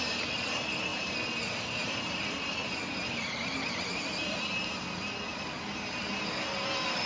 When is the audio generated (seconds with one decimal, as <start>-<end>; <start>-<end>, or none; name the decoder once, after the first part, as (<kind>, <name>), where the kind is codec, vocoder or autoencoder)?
0.9-4.8 (vocoder, BigVGAN v2); 5.3-6.0